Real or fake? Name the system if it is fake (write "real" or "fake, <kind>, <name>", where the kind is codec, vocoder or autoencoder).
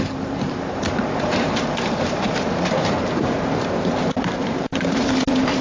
fake, vocoder, BigVGAN v2